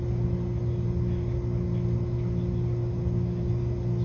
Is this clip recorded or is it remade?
recorded